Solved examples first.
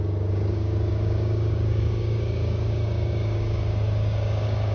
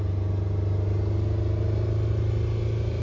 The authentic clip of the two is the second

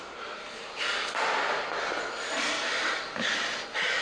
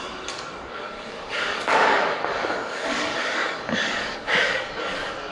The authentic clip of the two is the first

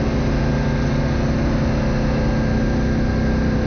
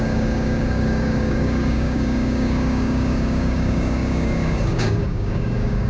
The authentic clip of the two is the first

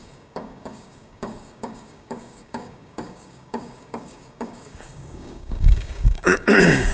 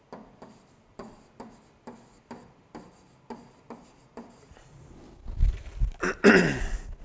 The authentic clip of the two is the second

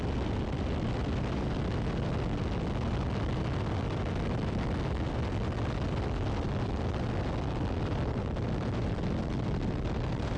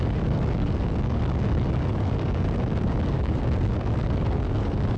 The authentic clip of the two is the first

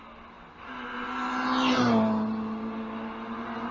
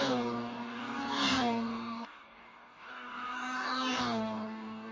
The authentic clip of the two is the first